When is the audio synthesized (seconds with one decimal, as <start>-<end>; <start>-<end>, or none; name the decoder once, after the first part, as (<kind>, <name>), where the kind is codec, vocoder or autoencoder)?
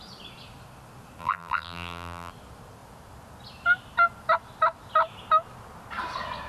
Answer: 1.2-2.3 (vocoder, BigVGAN v2)